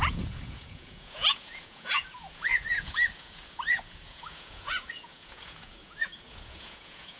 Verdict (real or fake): fake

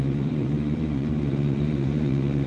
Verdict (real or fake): fake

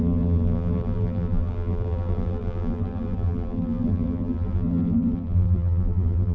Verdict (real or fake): fake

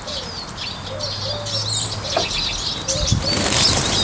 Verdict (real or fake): real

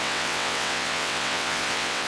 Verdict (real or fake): fake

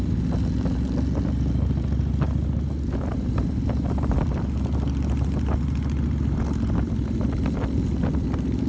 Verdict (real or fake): real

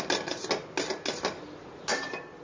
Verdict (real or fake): real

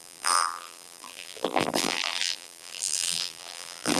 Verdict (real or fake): fake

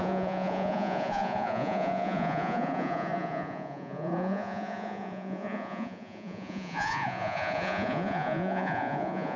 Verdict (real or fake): fake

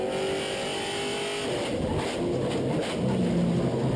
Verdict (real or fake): real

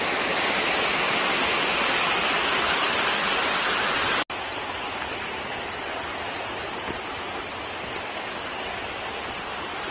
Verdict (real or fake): real